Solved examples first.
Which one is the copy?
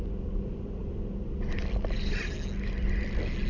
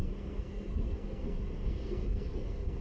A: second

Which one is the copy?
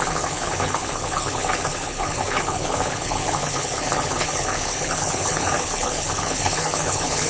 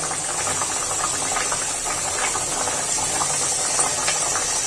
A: first